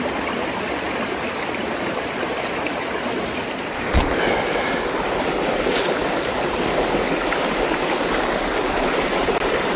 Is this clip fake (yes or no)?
no